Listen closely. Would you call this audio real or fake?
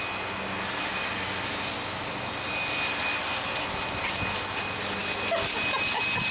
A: real